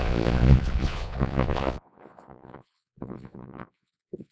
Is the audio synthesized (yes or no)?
yes